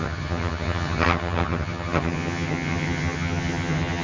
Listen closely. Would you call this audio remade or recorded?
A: remade